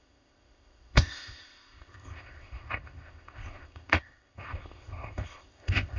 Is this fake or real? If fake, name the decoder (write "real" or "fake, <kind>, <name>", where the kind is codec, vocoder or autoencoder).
fake, codec, ZipCodec